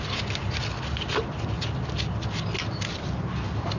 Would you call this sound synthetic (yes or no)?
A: no